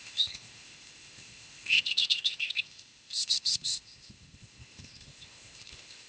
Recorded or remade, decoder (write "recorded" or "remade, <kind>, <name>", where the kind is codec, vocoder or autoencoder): remade, codec, ZipCodec